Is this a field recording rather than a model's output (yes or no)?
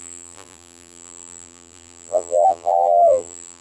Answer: no